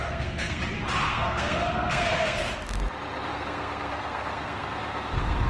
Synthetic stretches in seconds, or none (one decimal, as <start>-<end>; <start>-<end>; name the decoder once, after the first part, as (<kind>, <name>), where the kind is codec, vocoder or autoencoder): 0.0-0.6 (codec, SNAC); 1.1-2.4; 3.3-5.5